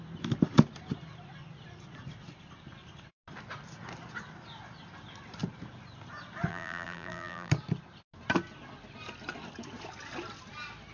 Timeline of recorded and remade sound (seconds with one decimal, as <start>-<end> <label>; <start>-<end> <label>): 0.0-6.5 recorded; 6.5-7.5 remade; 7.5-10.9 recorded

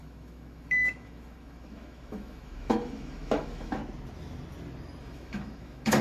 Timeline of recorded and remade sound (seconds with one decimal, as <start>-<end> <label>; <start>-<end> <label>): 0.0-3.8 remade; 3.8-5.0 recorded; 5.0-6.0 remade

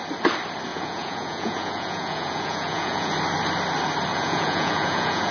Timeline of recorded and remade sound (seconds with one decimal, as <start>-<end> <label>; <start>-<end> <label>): 0.0-0.7 recorded; 0.7-3.1 remade; 3.1-4.1 recorded; 4.1-5.3 remade

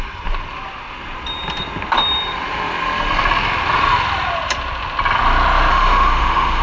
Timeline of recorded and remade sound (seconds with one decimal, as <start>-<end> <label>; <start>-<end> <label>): 0.0-5.7 recorded; 5.7-6.6 remade